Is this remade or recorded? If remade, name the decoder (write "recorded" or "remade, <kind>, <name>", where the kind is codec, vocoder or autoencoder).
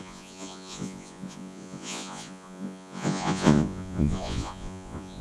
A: remade, vocoder, Vocos